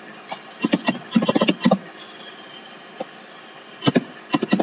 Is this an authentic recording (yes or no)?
yes